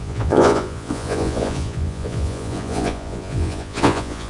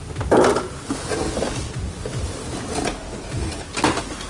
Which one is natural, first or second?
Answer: second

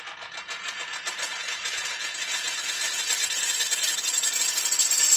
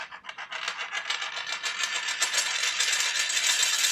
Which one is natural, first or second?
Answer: second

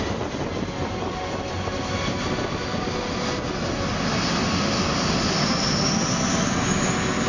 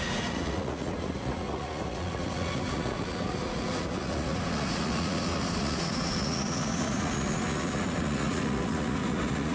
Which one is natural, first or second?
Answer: first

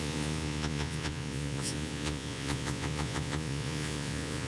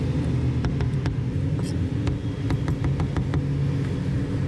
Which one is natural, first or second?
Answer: second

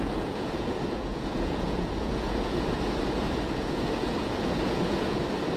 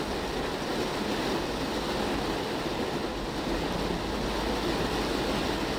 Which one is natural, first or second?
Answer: second